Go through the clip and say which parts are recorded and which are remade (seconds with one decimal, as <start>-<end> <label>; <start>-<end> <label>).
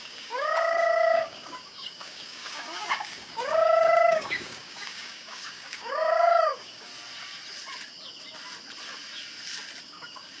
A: 0.0-6.9 remade; 6.9-9.8 recorded; 9.8-10.4 remade